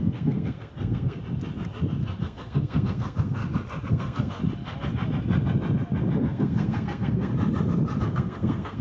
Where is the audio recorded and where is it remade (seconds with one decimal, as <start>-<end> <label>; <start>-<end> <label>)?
0.0-1.2 remade; 1.2-2.2 recorded; 2.2-3.4 remade; 3.4-3.9 recorded; 3.9-4.4 remade; 4.4-6.2 recorded; 6.2-7.3 remade; 7.3-8.0 recorded; 8.0-8.8 remade

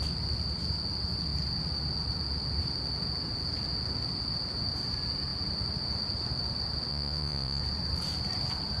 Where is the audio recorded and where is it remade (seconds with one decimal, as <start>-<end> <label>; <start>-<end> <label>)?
0.0-6.9 recorded; 6.9-7.6 remade; 7.6-8.8 recorded

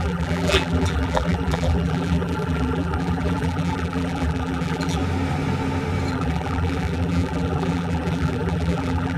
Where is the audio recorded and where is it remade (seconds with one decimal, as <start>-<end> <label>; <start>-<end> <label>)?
0.0-5.0 remade; 5.0-6.1 recorded; 6.1-9.2 remade